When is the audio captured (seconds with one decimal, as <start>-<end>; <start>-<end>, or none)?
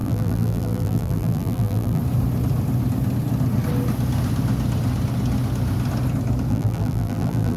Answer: 2.0-6.5